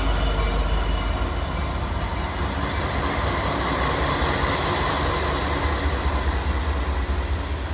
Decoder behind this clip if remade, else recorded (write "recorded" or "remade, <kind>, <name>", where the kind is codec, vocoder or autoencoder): recorded